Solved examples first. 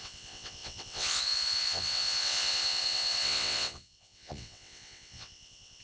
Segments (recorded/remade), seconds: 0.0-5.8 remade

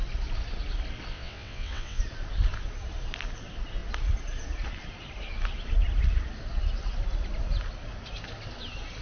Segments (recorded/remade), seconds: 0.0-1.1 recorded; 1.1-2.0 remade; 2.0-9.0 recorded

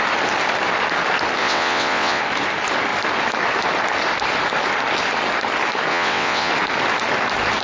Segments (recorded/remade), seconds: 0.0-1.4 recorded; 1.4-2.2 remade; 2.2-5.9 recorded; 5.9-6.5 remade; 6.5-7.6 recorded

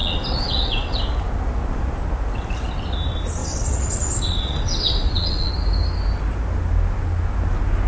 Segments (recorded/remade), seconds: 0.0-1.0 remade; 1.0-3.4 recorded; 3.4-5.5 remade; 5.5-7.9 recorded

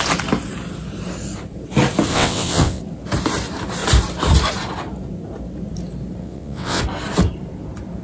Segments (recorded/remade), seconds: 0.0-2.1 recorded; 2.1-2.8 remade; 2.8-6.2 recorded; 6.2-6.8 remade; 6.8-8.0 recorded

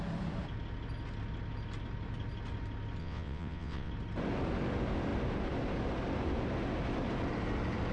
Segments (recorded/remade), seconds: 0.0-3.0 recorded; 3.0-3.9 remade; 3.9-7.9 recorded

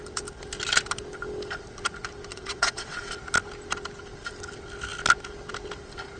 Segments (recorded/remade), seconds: 0.0-2.3 recorded; 2.3-3.1 remade; 3.1-6.2 recorded

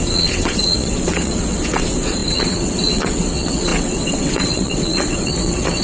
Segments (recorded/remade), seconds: 0.0-5.8 remade